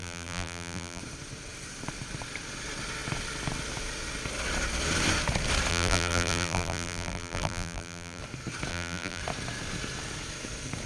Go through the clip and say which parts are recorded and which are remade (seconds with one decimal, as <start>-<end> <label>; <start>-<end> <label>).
0.0-1.0 remade; 1.0-5.7 recorded; 5.7-8.2 remade; 8.2-8.7 recorded; 8.7-9.2 remade; 9.2-10.9 recorded